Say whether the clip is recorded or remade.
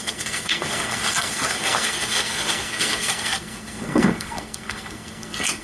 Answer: remade